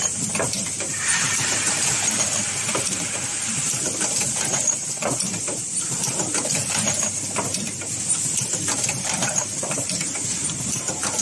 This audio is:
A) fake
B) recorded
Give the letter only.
A